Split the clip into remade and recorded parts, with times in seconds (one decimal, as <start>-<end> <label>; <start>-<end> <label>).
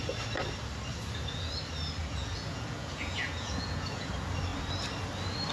0.0-0.9 recorded; 0.9-1.5 remade; 1.5-2.0 recorded; 2.0-4.1 remade; 4.1-5.5 recorded